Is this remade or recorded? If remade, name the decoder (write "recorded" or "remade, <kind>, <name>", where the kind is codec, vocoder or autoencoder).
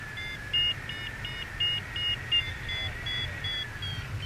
recorded